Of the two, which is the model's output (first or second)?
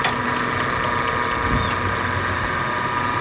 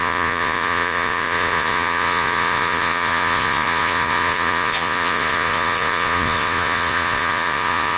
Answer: second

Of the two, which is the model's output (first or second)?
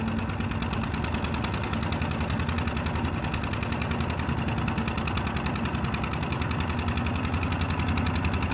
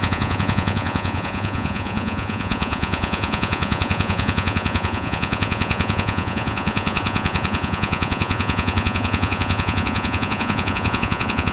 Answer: second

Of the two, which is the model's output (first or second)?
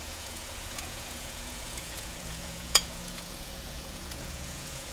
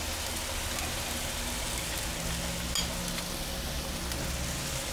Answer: first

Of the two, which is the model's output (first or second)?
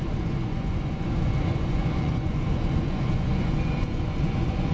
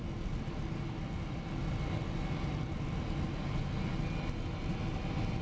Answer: first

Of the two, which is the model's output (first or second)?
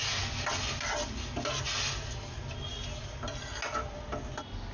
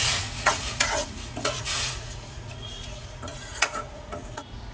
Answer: second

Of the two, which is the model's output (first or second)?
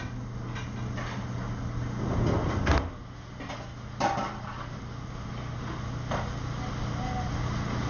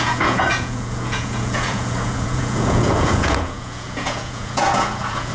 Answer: second